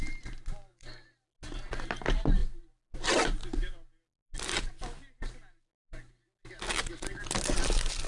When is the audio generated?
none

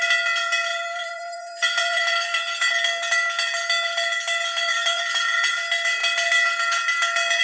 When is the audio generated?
0.7-2.7 (vocoder, BigVGAN v2); 4.7-5.5